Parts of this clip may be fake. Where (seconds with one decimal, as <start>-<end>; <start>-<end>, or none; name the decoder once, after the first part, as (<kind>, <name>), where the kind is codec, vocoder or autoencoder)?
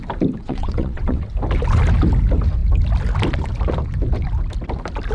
0.4-1.3 (vocoder, WaveNeXt)